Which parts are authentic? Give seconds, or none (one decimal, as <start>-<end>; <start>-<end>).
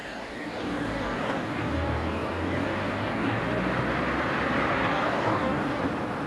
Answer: 3.4-4.7; 5.8-6.3